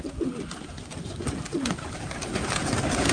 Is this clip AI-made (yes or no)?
no